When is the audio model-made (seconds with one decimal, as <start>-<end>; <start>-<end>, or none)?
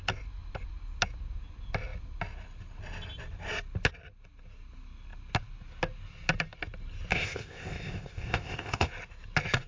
7.1-8.9